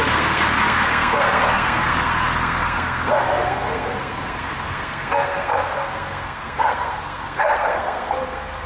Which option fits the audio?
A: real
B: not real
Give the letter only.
B